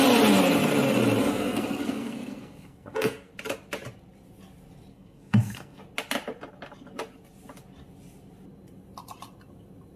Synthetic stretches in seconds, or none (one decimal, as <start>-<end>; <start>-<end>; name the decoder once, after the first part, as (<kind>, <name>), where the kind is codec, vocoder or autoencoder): 1.2-3.3 (codec, SNAC); 4.9-5.8